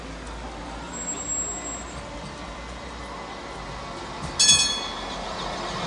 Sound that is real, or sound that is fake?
real